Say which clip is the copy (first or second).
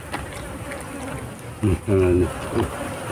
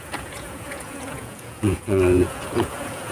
second